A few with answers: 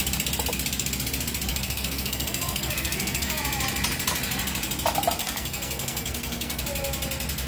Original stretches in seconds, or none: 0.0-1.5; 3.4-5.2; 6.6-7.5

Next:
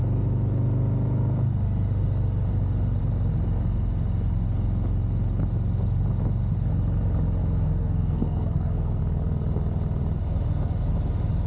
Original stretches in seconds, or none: 0.0-7.4; 9.0-11.5

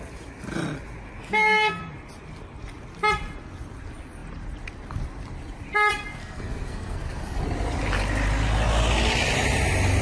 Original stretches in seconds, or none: 0.0-1.2; 1.8-6.2; 7.4-10.0